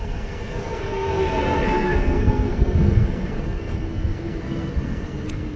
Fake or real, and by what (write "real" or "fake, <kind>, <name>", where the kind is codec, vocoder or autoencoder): fake, codec, SNAC